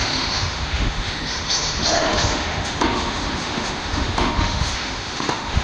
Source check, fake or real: fake